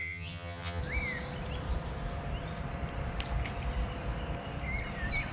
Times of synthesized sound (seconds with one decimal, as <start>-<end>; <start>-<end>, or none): 0.0-0.8